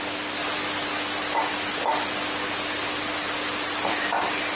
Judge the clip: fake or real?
real